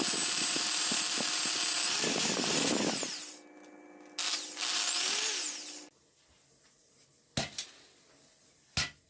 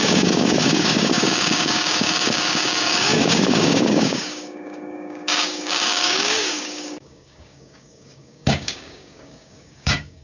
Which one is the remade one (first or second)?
second